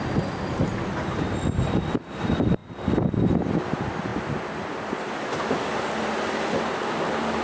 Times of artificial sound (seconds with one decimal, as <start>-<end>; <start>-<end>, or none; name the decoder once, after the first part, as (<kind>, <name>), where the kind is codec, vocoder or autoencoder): none